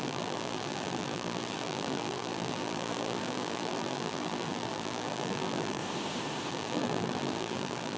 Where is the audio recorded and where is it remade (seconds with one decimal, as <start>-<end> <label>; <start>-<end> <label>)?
0.0-5.8 remade; 5.8-6.5 recorded; 6.5-8.0 remade